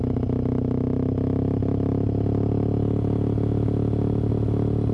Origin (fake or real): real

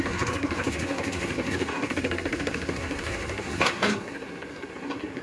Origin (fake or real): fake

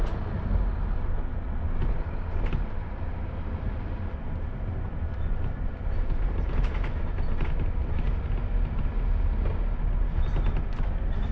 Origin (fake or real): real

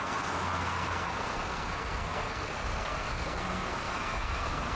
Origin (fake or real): fake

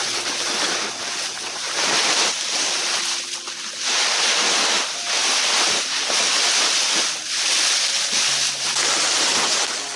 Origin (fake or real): real